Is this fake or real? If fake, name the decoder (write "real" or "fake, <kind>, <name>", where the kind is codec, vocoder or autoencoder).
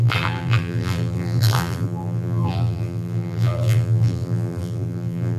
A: fake, vocoder, BigVGAN v2